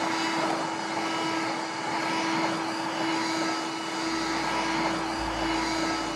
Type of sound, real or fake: real